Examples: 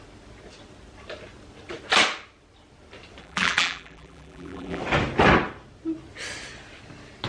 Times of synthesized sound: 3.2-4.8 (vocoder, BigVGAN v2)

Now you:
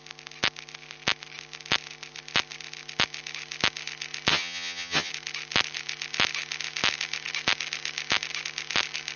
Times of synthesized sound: 4.3-5.1 (vocoder, HiFi-GAN)

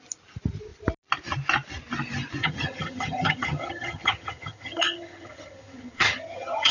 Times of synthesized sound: 2.4-6.7 (vocoder, HiFi-GAN)